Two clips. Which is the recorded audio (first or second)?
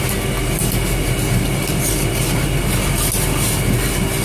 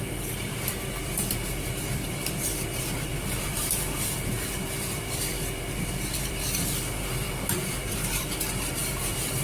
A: first